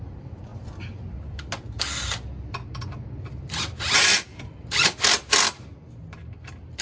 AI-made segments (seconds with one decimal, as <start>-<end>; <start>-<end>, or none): none